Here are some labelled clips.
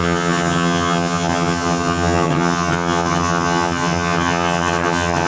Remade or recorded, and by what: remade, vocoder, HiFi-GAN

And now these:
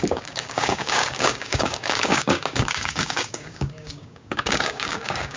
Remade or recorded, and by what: remade, codec, DAC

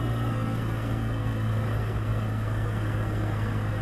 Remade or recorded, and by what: remade, codec, SNAC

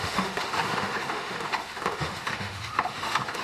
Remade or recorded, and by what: remade, autoencoder, DAC-VAE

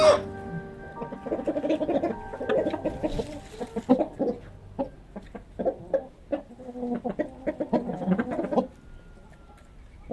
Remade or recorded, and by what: recorded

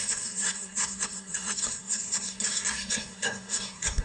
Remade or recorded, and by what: remade, codec, SNAC